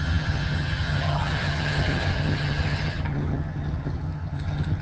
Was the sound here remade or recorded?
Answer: remade